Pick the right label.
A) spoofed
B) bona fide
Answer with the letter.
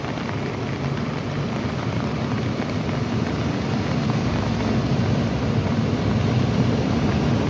B